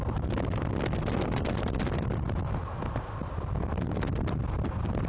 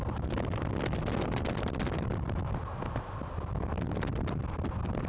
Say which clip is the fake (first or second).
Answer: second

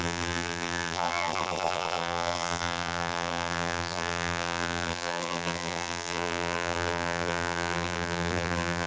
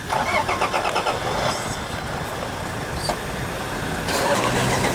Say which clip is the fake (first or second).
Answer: first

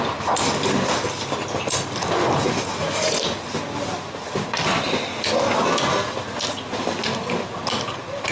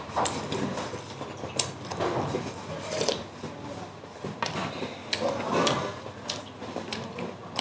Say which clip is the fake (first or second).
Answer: second